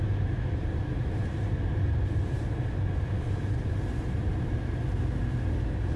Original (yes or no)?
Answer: yes